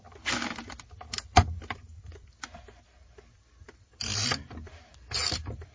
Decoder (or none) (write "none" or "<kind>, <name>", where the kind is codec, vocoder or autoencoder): vocoder, BigVGAN v2